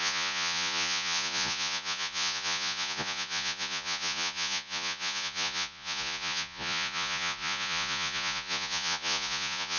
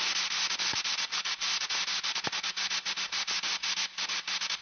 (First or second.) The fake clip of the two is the first